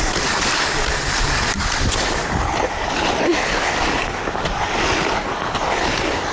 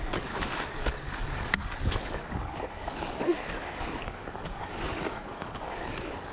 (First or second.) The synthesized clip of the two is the second